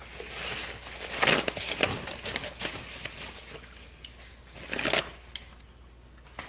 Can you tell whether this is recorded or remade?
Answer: recorded